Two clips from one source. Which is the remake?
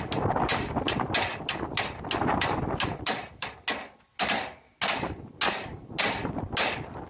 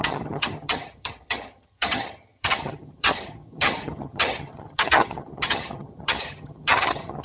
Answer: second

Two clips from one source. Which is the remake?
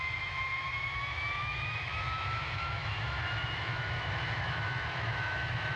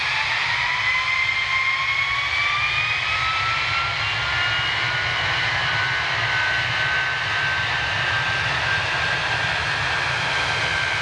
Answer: first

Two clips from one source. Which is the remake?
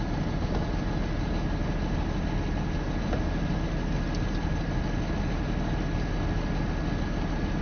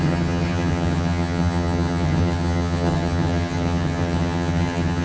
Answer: second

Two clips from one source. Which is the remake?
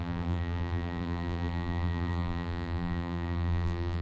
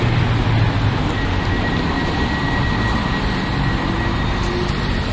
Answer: first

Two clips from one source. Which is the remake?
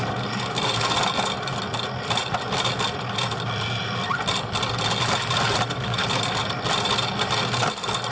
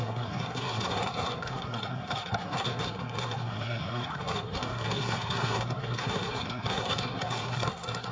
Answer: second